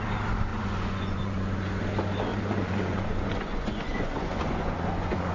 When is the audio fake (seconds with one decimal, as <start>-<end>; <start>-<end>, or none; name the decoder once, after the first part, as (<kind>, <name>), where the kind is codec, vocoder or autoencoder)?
0.5-1.8 (vocoder, Vocos); 2.3-5.3